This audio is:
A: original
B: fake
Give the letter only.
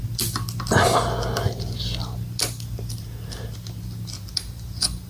A